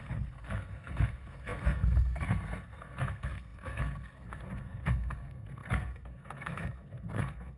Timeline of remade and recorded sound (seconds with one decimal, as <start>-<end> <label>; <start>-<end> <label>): 0.0-7.6 remade